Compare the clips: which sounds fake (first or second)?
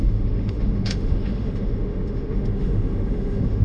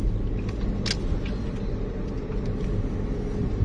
first